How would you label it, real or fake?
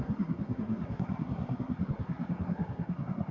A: fake